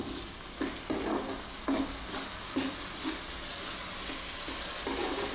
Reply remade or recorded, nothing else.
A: recorded